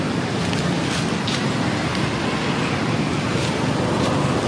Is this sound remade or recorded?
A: recorded